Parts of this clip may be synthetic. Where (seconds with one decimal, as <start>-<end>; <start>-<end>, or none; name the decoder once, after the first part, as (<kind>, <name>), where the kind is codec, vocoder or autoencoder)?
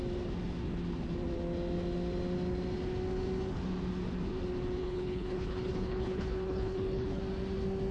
4.8-7.2 (codec, HILCodec)